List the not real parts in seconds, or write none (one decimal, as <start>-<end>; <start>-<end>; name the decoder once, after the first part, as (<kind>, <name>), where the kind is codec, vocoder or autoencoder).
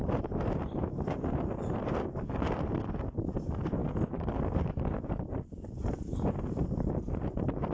none